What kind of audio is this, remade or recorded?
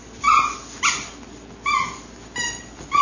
recorded